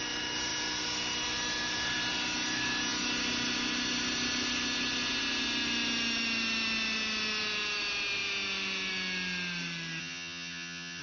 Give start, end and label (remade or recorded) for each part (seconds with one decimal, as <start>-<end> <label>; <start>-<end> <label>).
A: 0.0-10.0 recorded; 10.0-11.0 remade